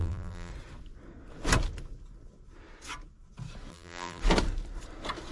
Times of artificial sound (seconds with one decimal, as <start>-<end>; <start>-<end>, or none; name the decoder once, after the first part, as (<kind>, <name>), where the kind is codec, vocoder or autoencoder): 0.0-0.5 (vocoder, BigVGAN v2); 3.7-4.2

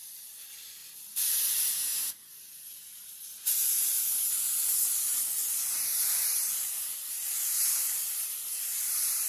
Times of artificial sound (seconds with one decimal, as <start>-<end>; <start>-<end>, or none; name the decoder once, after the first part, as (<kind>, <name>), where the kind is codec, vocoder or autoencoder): 0.0-9.3 (vocoder, BigVGAN v2)

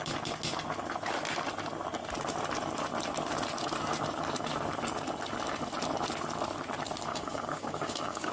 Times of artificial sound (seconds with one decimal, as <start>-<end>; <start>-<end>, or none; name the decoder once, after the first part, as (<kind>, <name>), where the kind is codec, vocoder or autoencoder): 7.1-8.3 (codec, DAC)

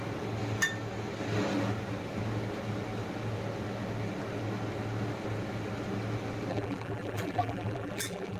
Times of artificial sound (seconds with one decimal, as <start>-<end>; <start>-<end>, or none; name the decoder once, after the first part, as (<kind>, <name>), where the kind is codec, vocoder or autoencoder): 6.5-8.4 (vocoder, BigVGAN v2)

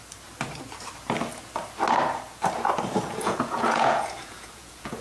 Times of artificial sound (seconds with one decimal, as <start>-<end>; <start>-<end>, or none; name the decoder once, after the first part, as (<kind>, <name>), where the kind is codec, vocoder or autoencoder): 3.0-5.0 (vocoder, Vocos)

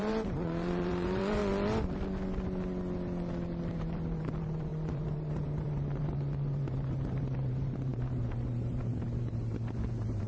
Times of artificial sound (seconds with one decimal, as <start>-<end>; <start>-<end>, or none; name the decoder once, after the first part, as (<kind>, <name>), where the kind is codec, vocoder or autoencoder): 0.0-1.4 (vocoder, BigVGAN v2); 3.6-10.3

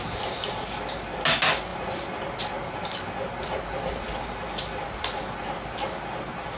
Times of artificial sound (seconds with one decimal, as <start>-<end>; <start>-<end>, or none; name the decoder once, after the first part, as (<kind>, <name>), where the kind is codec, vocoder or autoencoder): none

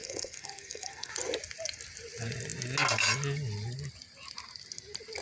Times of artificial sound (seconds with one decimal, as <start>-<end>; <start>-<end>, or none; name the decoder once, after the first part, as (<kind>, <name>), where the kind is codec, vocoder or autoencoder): 0.0-1.1 (codec, SNAC)